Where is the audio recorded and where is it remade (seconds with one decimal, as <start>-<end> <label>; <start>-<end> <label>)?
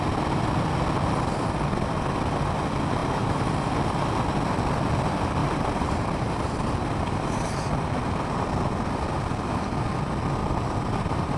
0.0-3.0 recorded; 3.0-3.5 remade; 3.5-5.4 recorded; 5.4-7.6 remade; 7.6-10.4 recorded; 10.4-11.4 remade